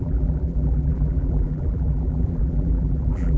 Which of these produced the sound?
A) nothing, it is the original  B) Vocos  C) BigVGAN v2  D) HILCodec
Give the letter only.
C